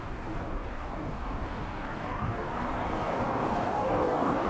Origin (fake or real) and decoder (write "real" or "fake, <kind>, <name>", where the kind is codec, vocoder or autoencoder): fake, codec, DAC